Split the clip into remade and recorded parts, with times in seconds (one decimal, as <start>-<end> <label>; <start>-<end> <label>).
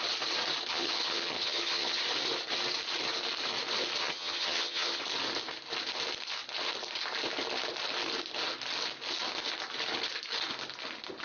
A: 0.0-0.7 recorded; 0.7-2.0 remade; 2.0-4.0 recorded; 4.0-5.0 remade; 5.0-11.2 recorded